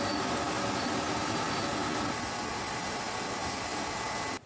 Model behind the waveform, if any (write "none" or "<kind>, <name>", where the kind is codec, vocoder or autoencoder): none